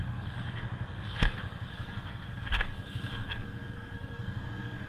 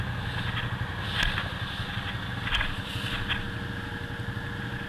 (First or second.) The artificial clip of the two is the first